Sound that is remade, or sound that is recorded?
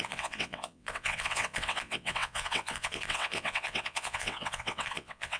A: remade